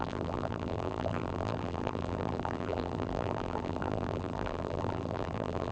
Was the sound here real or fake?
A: fake